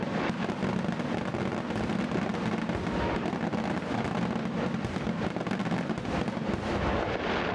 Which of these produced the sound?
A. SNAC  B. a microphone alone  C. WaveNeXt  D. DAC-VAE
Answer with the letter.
B